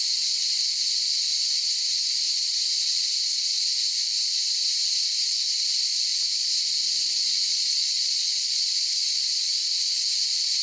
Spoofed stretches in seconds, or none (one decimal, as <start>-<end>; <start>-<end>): 7.5-8.6